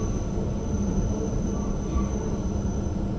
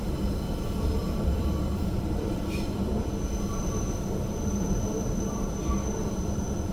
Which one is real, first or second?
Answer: first